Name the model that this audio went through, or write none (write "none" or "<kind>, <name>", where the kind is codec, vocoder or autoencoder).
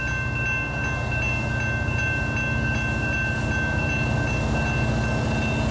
none